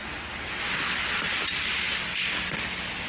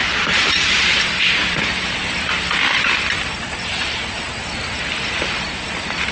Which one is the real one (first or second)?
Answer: first